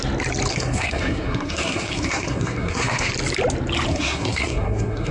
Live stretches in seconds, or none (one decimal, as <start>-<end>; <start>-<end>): 0.0-0.5; 3.1-3.9